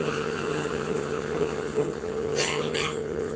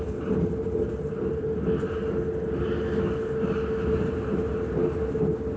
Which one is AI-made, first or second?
first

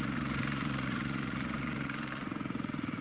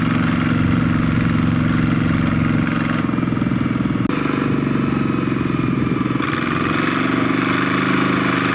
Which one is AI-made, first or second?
first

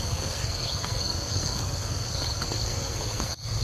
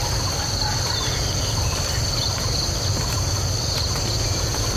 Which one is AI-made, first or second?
first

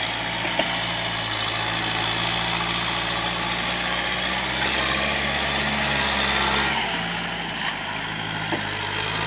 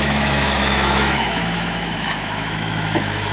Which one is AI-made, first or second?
second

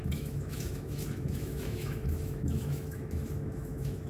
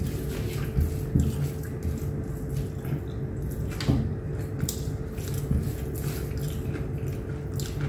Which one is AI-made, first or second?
first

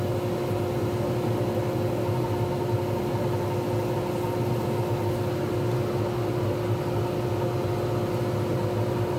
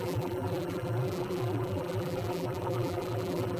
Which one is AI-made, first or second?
second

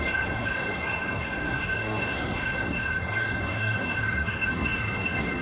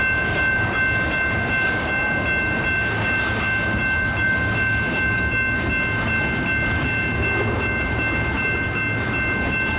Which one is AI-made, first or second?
first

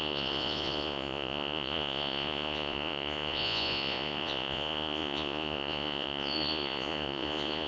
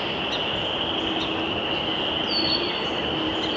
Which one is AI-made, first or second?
first